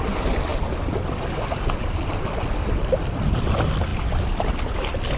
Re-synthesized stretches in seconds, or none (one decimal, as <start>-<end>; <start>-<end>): 0.5-3.5

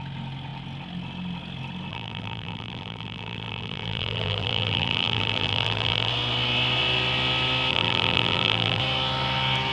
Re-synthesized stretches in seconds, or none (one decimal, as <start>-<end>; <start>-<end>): 1.9-6.1; 7.7-8.8

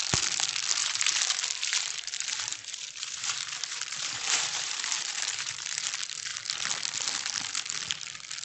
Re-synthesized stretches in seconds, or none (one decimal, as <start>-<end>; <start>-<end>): 0.8-5.8